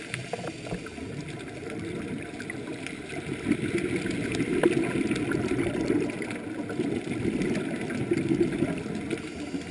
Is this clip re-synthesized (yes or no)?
no